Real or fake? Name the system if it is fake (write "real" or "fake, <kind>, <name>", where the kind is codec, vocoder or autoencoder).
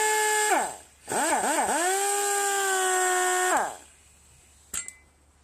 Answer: real